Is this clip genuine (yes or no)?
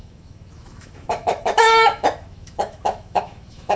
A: no